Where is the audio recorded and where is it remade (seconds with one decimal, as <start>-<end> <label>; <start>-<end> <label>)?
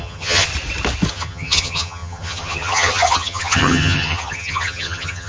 0.0-0.5 remade; 0.5-1.1 recorded; 1.1-5.3 remade